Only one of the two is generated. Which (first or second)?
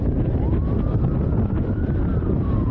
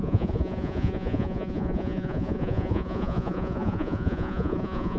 second